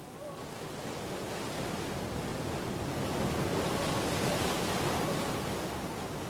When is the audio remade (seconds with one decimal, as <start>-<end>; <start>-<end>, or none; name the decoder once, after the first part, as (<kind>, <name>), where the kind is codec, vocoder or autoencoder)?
none